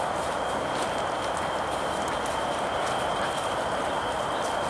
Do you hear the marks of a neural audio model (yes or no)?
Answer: no